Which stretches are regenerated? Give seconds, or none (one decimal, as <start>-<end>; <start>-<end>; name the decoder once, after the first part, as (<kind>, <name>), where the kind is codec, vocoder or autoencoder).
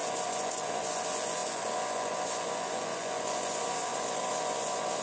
0.0-5.0 (vocoder, Vocos)